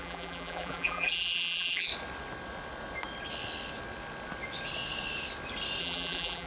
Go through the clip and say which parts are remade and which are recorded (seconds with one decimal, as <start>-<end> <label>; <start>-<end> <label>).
0.0-1.9 remade; 1.9-5.8 recorded; 5.8-6.5 remade